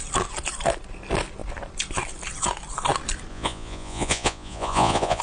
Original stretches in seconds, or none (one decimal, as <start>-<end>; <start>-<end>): 0.0-3.3